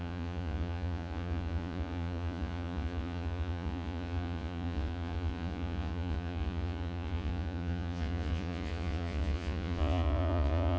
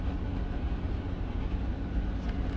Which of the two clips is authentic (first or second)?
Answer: second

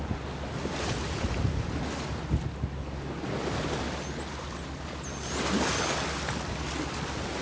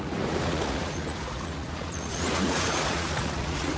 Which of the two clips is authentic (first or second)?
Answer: first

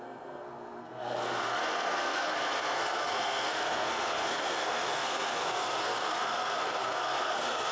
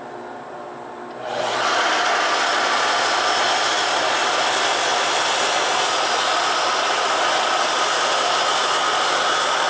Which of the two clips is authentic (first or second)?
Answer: second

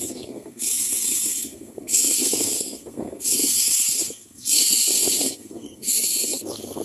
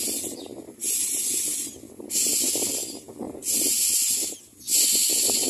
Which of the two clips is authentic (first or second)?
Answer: second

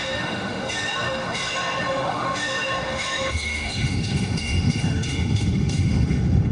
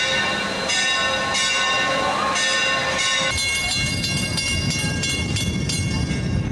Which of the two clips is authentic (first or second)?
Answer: second